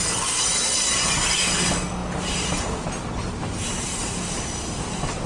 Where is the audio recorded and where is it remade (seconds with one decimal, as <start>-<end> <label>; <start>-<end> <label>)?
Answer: 0.0-5.3 recorded